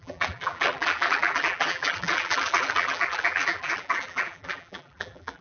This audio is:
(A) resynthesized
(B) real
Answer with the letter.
A